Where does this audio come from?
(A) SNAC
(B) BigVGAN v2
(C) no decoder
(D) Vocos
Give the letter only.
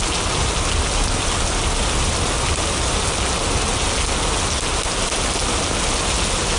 C